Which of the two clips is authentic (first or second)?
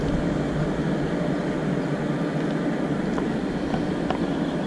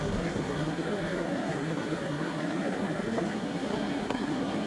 first